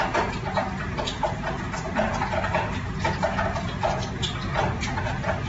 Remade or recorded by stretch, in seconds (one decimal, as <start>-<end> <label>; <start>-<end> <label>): 0.0-0.9 recorded; 0.9-4.2 remade; 4.2-5.5 recorded